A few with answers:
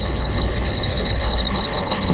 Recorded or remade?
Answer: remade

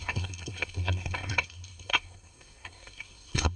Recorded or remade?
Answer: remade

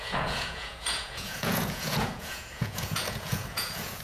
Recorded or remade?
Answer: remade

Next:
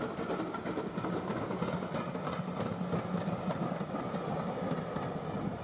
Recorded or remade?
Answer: recorded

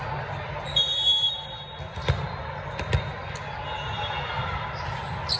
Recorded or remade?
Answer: recorded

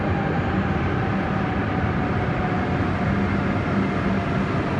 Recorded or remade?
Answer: recorded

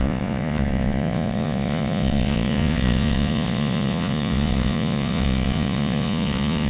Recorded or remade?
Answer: remade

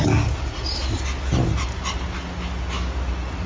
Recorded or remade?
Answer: recorded